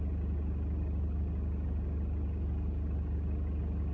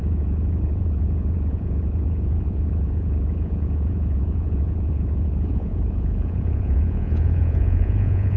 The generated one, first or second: second